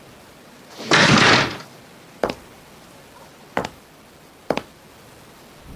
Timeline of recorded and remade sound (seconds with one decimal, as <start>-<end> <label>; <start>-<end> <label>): 0.0-5.8 remade